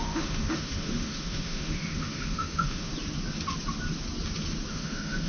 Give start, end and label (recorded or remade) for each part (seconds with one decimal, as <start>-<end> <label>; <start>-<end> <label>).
0.0-2.9 remade; 2.9-4.7 recorded; 4.7-5.3 remade